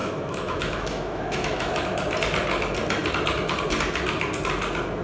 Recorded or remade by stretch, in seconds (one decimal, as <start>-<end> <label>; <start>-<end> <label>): 0.0-1.7 remade; 1.7-5.0 recorded

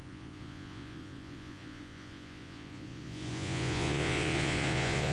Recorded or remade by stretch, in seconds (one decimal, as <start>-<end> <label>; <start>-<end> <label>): 0.0-5.1 remade

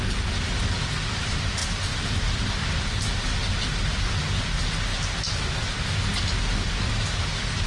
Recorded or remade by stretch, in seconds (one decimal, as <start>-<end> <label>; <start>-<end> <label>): 0.0-7.7 recorded

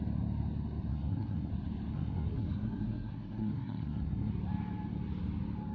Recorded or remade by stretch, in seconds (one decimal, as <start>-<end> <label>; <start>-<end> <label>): 0.0-0.9 recorded; 0.9-1.5 remade; 1.5-1.9 recorded; 1.9-4.3 remade; 4.3-5.7 recorded

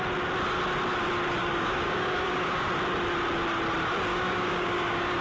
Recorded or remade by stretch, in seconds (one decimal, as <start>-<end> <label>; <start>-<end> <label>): 0.0-1.4 recorded; 1.4-2.7 remade; 2.7-4.1 recorded; 4.1-5.2 remade

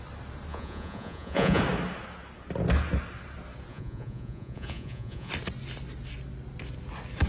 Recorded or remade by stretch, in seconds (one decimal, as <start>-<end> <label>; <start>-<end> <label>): 0.0-0.5 recorded; 0.5-1.6 remade; 1.6-3.7 recorded; 3.7-5.3 remade; 5.3-7.3 recorded